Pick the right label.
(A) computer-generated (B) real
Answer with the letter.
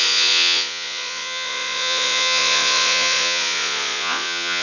A